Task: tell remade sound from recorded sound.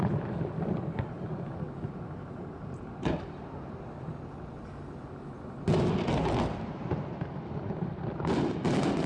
recorded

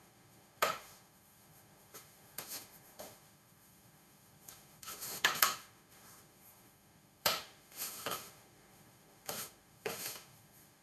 remade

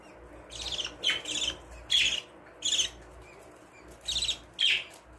recorded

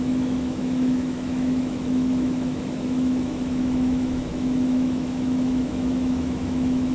remade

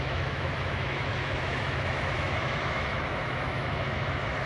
remade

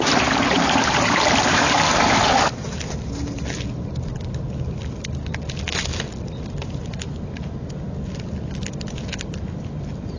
recorded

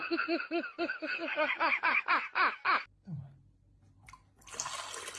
recorded